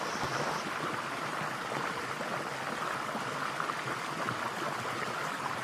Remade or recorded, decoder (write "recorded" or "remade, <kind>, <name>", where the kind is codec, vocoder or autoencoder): recorded